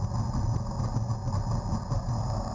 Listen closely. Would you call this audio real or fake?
real